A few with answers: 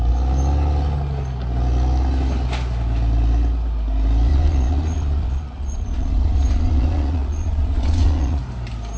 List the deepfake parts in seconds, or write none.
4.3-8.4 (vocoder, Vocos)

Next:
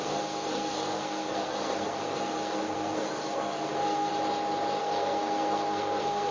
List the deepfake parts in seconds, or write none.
0.0-4.1 (codec, SNAC); 4.8-6.3

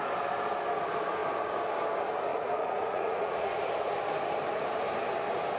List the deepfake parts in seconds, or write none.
2.3-3.7 (vocoder, Vocos)